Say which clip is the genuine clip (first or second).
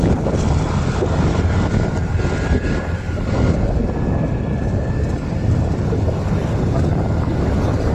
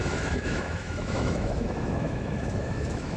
first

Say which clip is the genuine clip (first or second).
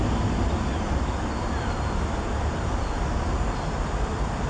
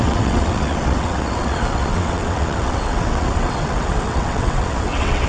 first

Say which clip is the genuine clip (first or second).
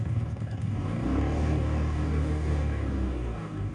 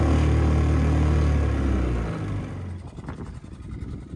second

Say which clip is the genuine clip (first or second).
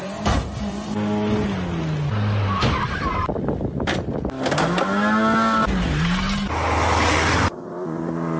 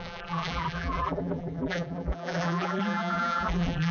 first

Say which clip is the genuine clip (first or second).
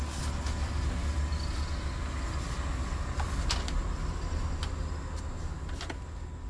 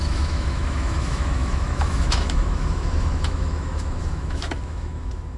first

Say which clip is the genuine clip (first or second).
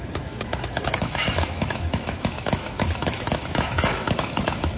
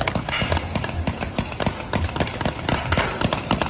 second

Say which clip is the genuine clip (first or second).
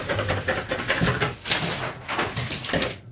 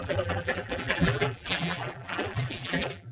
first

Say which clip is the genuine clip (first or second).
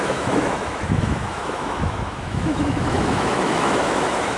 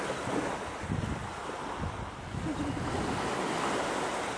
second